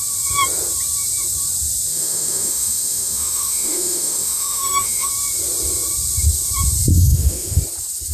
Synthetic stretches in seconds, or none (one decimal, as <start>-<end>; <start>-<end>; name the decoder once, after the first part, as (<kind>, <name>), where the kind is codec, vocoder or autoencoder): 1.9-5.1 (autoencoder, DAC-VAE); 6.9-7.6